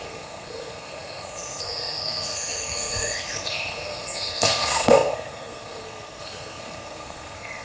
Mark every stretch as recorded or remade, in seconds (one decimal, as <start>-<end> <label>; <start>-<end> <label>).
0.0-7.6 remade